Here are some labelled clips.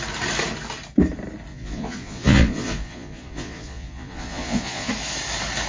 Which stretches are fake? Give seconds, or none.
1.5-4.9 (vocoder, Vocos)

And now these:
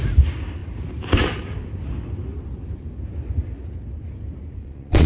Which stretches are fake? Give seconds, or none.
4.6-5.1 (vocoder, Vocos)